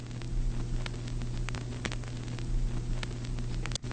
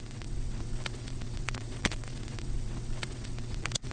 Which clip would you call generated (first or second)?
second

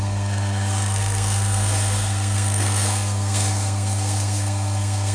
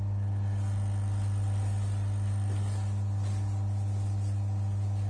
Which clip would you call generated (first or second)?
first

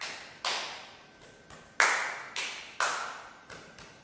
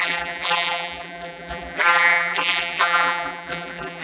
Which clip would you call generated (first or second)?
second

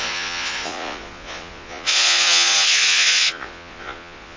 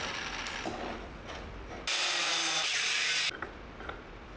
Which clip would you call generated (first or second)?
first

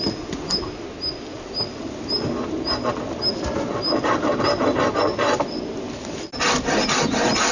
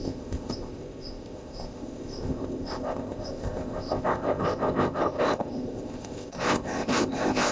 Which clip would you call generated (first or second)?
second